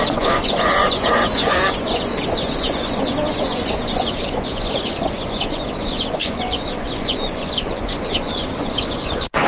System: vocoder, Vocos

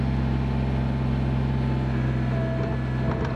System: none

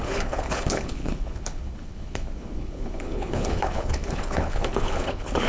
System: codec, HILCodec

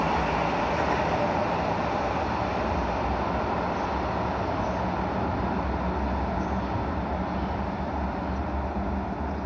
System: none